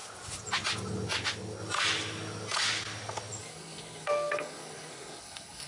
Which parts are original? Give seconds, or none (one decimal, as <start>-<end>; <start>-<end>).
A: 0.0-3.4